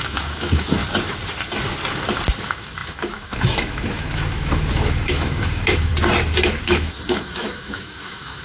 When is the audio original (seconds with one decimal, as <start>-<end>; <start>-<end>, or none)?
0.8-2.4; 5.9-6.6